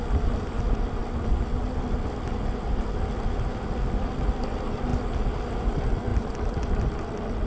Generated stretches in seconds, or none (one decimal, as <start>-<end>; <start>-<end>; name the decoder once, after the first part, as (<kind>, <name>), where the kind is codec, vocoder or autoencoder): 6.1-7.5 (vocoder, BigVGAN v2)